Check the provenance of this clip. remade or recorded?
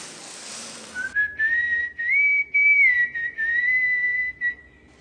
recorded